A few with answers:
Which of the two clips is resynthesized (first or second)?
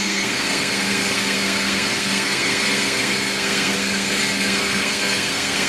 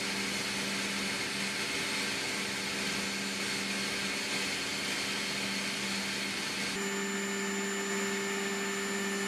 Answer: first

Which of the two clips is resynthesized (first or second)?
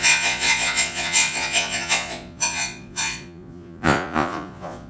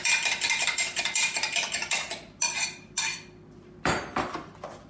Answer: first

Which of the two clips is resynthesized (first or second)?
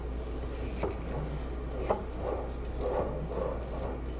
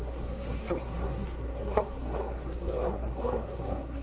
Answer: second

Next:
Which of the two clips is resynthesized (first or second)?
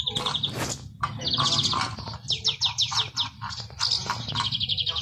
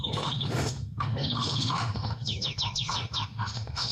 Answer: second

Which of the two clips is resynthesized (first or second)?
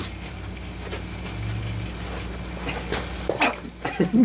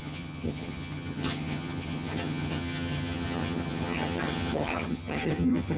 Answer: second